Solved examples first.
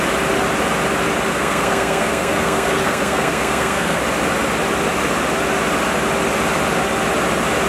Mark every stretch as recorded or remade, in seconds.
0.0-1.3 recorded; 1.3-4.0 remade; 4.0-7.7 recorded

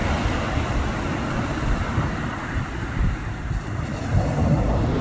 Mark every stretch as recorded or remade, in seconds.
0.0-5.0 recorded

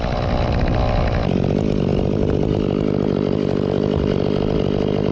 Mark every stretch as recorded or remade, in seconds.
0.0-5.1 recorded